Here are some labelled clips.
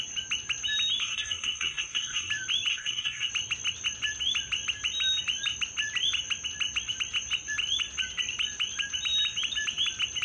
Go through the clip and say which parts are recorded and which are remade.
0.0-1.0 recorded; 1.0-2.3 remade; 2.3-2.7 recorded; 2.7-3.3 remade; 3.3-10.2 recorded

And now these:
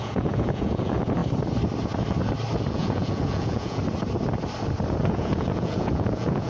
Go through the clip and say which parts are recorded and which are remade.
0.0-1.2 remade; 1.2-2.7 recorded; 2.7-3.8 remade; 3.8-4.9 recorded; 4.9-6.5 remade

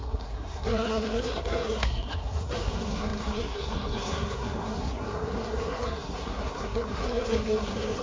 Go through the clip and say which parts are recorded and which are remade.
0.0-8.0 remade

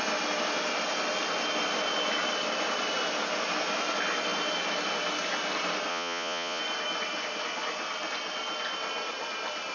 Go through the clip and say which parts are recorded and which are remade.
0.0-5.9 recorded; 5.9-6.6 remade; 6.6-9.7 recorded

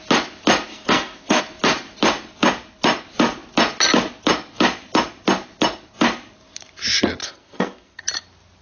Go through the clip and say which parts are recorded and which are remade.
0.0-0.7 recorded; 0.7-1.4 remade; 1.4-7.2 recorded; 7.2-8.0 remade; 8.0-8.6 recorded

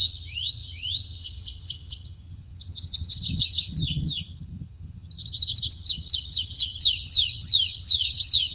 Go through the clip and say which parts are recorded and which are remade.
0.0-8.5 remade

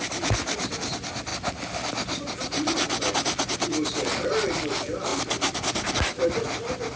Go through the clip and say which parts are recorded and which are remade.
0.0-7.0 recorded